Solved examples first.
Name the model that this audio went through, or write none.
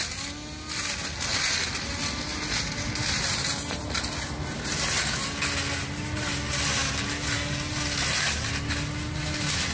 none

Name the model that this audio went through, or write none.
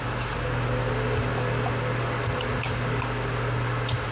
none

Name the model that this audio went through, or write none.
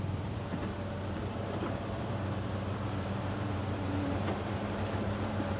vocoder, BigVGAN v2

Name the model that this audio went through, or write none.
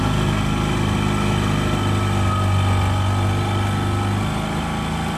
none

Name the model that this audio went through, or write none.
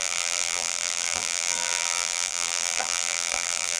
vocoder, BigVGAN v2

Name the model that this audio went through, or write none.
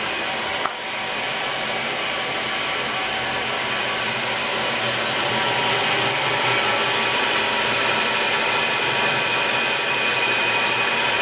vocoder, BigVGAN v2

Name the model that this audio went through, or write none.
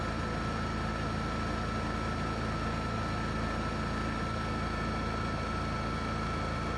none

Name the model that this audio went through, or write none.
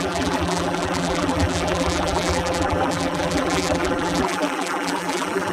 vocoder, BigVGAN v2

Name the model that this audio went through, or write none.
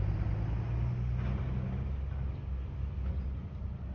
none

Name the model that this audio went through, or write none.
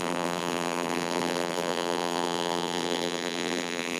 vocoder, BigVGAN v2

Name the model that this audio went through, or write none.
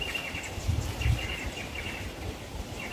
none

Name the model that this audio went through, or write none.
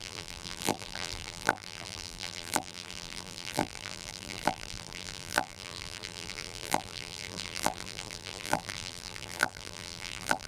vocoder, BigVGAN v2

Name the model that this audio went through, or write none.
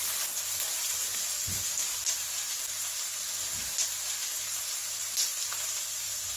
none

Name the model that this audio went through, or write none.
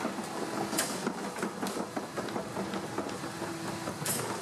none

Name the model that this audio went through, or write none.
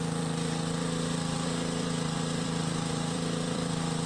vocoder, BigVGAN v2